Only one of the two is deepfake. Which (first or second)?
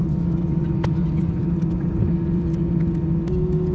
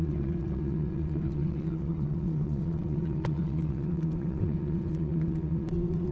second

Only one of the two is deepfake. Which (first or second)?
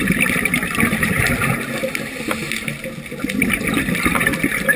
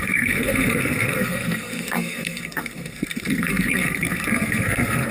second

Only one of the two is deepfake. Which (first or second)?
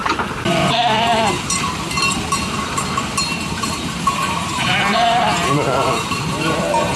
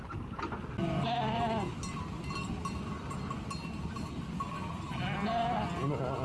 first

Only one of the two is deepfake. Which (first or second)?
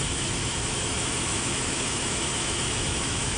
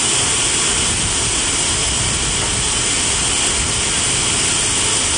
first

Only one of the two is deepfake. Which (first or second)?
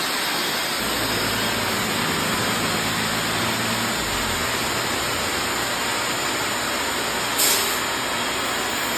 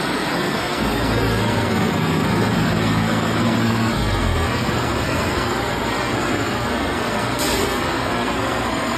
second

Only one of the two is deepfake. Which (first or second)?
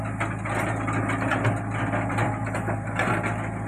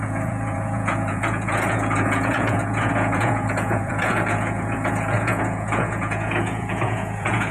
second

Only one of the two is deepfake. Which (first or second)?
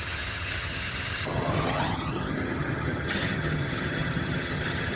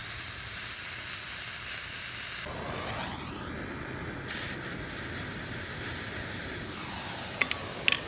first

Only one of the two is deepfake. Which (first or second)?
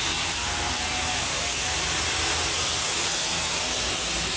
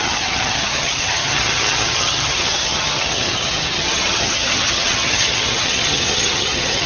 second